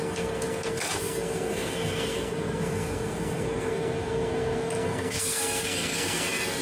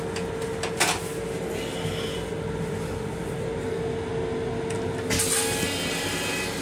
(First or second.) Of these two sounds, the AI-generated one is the first